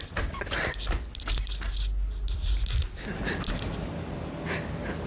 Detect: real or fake real